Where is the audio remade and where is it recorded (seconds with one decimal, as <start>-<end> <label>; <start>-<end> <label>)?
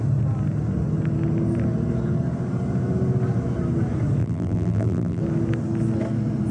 0.0-4.2 recorded; 4.2-5.2 remade; 5.2-6.5 recorded